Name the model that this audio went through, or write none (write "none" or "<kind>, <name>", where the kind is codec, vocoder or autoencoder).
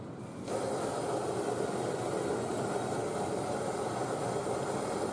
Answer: none